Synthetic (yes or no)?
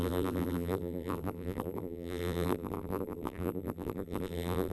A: yes